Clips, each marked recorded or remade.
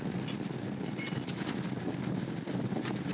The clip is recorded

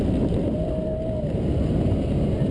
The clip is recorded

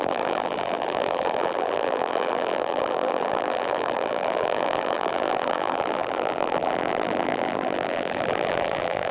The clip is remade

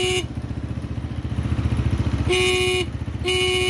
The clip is recorded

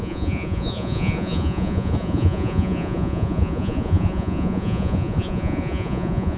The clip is remade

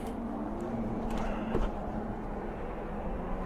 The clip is recorded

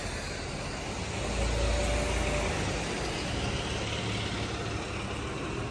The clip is recorded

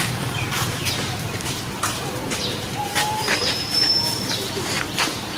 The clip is remade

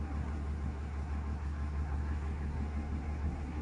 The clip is remade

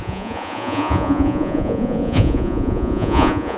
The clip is remade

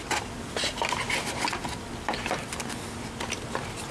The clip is recorded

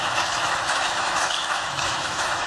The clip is remade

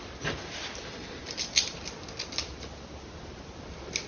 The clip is recorded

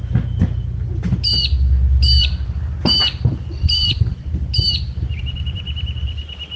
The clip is recorded